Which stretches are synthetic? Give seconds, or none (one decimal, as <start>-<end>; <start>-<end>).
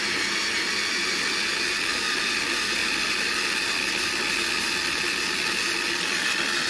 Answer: none